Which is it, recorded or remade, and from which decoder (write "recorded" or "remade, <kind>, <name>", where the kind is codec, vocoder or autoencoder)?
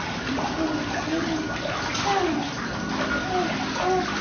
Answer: recorded